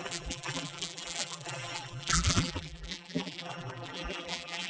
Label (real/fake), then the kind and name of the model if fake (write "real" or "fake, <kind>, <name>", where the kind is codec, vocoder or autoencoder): fake, vocoder, BigVGAN v2